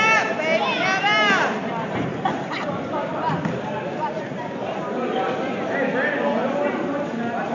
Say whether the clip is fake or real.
real